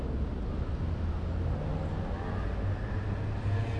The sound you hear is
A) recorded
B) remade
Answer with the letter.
A